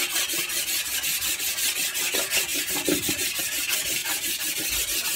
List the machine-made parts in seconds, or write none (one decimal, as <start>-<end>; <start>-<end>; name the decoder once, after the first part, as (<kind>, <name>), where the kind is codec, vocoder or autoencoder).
2.5-3.1 (vocoder, BigVGAN v2); 4.0-4.7